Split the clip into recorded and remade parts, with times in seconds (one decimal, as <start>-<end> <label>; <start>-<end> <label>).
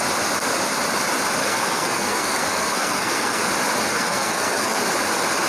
0.0-1.4 recorded; 1.4-3.5 remade; 3.5-3.9 recorded; 3.9-4.8 remade; 4.8-5.5 recorded